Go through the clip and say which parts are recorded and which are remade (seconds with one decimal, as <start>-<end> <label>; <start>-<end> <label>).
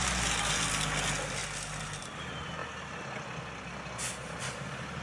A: 0.0-5.0 recorded